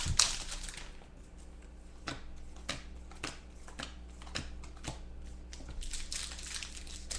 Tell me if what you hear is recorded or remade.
recorded